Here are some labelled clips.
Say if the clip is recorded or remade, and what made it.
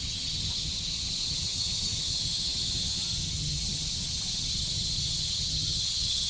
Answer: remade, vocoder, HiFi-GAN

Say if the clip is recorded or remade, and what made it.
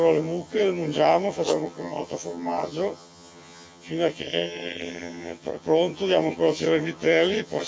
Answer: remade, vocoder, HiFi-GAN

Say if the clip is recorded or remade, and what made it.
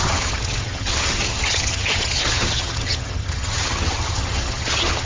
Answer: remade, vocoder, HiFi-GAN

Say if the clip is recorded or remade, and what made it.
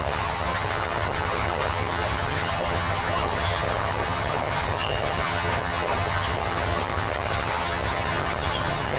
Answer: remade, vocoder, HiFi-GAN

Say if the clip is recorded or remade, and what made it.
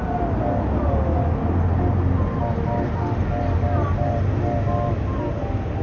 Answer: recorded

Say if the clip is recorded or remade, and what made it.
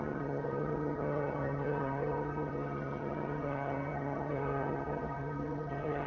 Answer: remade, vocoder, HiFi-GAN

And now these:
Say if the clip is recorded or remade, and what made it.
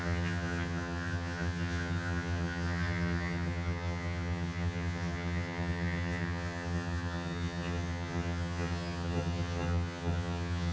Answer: remade, vocoder, HiFi-GAN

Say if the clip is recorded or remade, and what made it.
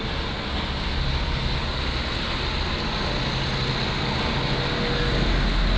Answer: recorded